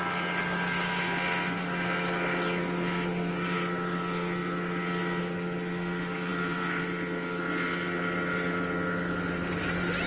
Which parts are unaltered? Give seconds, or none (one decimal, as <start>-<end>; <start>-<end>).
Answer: 0.0-6.3; 6.8-10.1